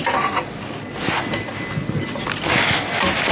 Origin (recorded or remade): recorded